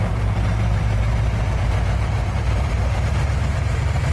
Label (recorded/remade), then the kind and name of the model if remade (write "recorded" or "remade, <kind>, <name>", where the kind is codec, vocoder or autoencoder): remade, vocoder, BigVGAN v2